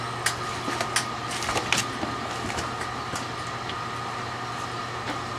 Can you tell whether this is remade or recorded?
recorded